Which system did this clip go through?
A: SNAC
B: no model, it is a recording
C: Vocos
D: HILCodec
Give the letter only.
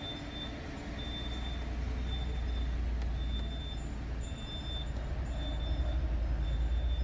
B